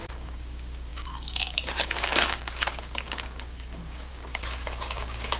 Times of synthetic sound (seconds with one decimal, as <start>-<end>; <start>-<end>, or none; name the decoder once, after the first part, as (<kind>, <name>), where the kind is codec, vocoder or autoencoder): 0.0-5.4 (codec, DAC)